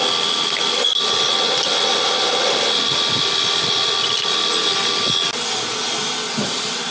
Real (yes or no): yes